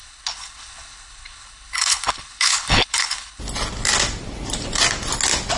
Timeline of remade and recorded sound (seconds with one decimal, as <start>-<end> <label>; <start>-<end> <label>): 0.0-3.4 remade; 3.4-5.6 recorded